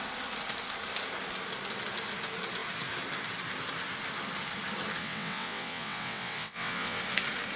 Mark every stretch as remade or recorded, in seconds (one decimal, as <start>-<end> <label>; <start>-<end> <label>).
0.0-5.0 recorded; 5.0-7.0 remade; 7.0-7.6 recorded